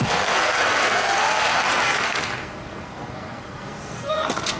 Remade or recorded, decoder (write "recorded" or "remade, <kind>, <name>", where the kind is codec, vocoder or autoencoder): remade, codec, SNAC